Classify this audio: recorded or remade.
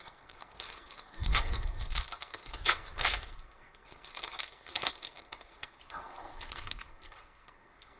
remade